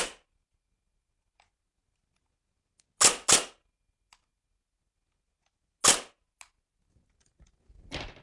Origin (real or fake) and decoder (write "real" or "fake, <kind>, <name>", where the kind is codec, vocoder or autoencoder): real